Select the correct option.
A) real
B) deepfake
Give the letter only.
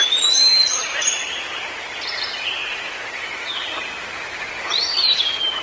A